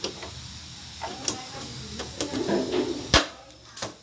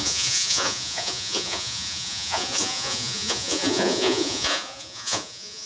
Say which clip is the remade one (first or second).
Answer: second